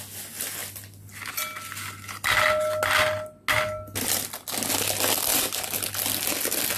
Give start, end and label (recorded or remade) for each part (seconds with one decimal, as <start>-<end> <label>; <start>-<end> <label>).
0.0-6.8 recorded